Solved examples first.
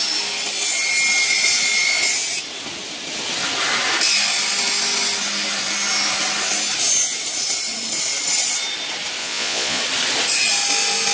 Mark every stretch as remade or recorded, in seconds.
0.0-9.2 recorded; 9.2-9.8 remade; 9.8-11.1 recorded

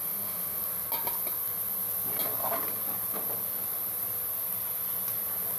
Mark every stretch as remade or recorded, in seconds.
0.0-0.6 remade; 0.6-5.6 recorded

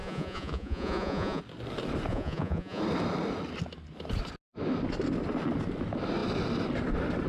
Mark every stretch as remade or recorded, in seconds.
0.0-1.4 remade; 1.4-2.1 recorded; 2.1-2.8 remade; 2.8-7.3 recorded